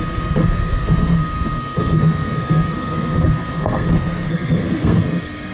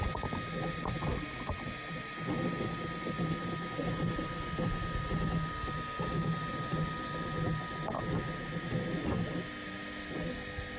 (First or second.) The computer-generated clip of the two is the first